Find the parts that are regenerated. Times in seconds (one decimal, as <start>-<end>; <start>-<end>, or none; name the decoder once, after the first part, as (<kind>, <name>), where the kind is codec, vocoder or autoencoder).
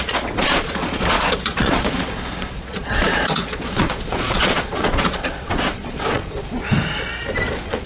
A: 0.0-6.7 (vocoder, Vocos); 7.2-7.9